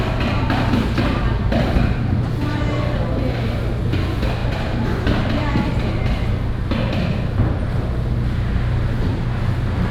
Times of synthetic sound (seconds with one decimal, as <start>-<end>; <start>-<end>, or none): none